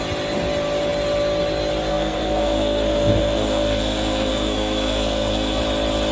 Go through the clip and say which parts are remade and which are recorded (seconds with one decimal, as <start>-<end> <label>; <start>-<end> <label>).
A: 0.0-1.9 recorded; 1.9-5.6 remade; 5.6-6.1 recorded